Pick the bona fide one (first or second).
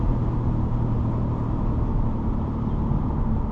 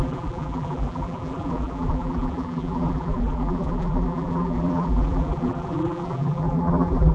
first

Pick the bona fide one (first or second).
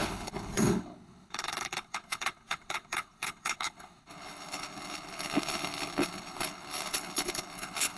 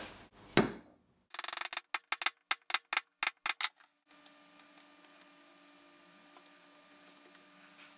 second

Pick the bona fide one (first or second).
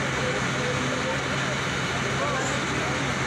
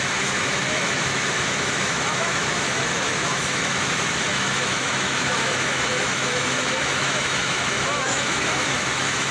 first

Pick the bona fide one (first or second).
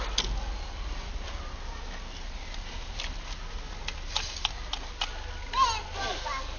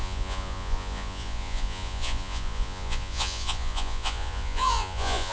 first